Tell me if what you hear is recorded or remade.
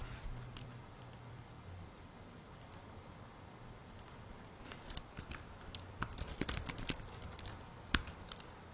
remade